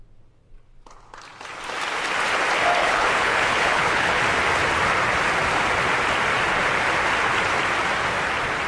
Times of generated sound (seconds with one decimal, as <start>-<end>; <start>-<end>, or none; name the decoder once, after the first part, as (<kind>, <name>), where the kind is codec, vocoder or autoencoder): 2.8-4.2 (codec, HILCodec)